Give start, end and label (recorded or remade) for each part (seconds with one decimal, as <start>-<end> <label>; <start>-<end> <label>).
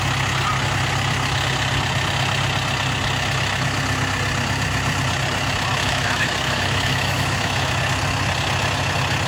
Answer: 0.0-5.8 recorded; 5.8-7.7 remade; 7.7-9.3 recorded